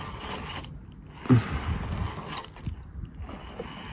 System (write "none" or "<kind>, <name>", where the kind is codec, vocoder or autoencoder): none